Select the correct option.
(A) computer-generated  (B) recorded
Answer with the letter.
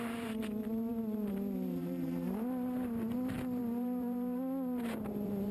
A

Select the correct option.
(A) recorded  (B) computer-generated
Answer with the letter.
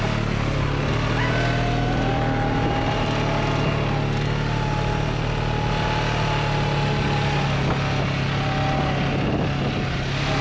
A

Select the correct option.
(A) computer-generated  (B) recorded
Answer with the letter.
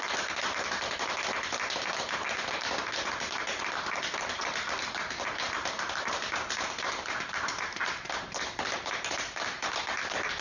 A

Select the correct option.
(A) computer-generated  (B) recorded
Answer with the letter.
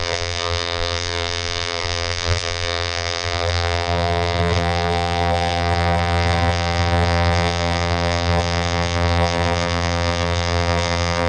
A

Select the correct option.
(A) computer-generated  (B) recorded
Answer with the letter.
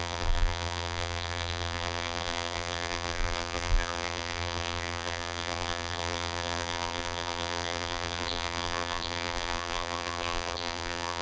A